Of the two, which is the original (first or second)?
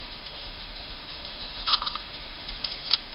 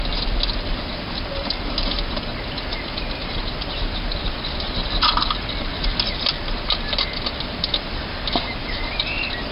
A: second